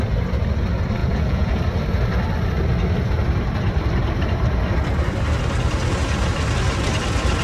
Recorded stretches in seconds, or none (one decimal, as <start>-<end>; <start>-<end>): 0.0-1.0; 1.6-7.4